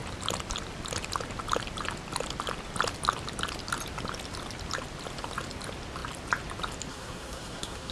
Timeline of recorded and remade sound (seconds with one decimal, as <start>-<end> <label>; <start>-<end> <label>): 0.0-6.9 recorded; 6.9-7.9 remade